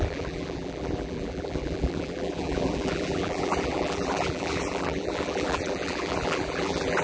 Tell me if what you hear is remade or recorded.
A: remade